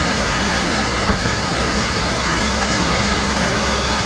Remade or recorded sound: remade